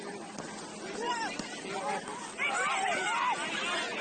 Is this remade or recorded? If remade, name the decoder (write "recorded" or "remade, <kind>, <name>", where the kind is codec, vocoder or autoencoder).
recorded